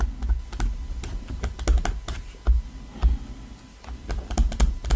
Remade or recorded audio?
recorded